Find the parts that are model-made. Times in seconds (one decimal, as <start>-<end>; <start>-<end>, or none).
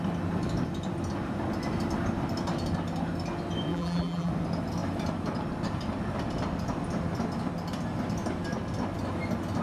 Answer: 3.7-4.3